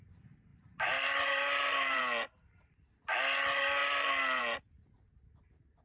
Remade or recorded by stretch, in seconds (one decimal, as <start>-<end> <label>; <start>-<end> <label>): 0.0-0.5 recorded; 0.5-2.0 remade; 2.0-5.8 recorded